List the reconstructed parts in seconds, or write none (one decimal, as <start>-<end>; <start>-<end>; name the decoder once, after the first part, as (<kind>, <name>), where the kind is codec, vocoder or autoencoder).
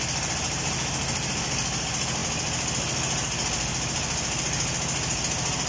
none